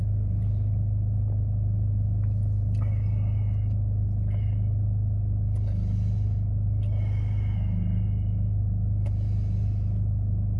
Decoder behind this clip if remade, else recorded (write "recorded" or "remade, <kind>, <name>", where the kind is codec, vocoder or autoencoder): recorded